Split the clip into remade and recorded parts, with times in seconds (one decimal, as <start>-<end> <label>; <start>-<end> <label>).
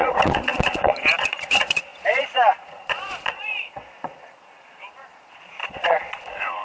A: 0.0-6.6 remade